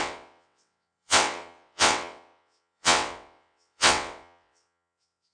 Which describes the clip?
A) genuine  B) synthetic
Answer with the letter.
B